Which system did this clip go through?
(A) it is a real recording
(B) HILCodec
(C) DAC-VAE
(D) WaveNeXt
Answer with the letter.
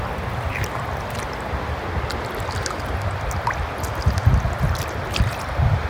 A